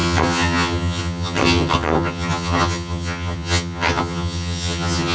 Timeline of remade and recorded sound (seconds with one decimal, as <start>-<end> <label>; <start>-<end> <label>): 0.0-5.1 remade